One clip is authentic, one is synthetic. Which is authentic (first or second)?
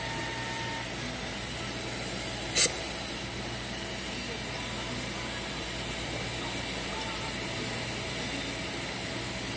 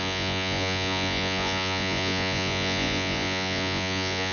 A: first